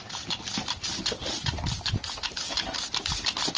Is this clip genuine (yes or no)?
yes